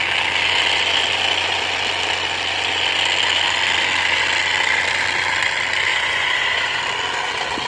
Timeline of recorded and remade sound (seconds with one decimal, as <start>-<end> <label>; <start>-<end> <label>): 0.0-5.9 recorded; 5.9-6.8 remade; 6.8-7.7 recorded